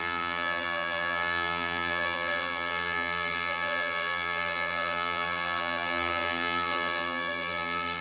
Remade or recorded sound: remade